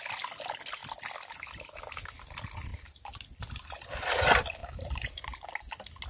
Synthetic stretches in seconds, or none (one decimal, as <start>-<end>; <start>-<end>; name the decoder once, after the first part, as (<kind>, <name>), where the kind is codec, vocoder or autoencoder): 4.6-5.5 (vocoder, BigVGAN v2)